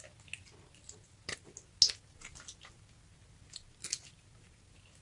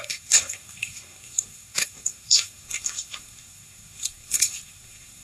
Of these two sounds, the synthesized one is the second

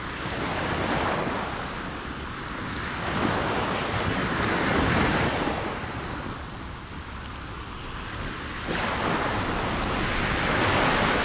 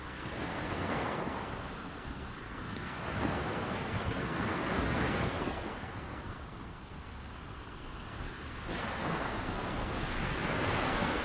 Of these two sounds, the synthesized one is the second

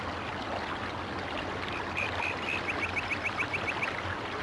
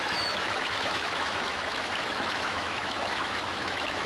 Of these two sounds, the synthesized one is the second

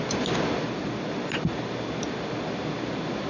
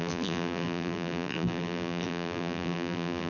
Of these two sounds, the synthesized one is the second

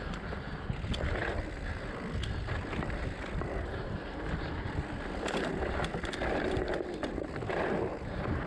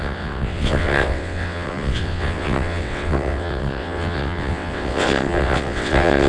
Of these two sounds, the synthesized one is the second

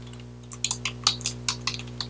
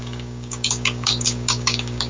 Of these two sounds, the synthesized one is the second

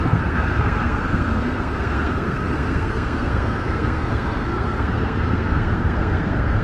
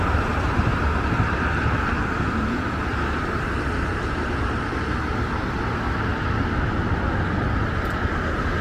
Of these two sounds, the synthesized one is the first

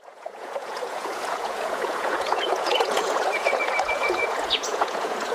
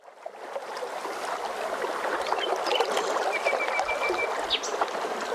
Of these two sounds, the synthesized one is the first